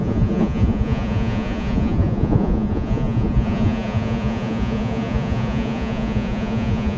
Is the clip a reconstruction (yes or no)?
yes